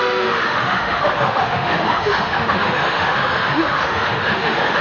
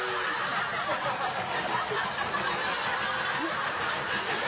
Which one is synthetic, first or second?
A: first